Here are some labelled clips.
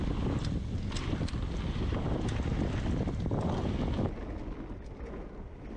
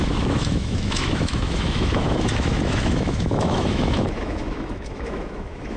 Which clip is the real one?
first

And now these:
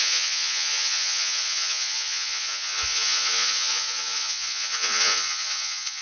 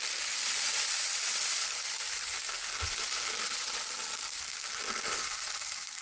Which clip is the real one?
second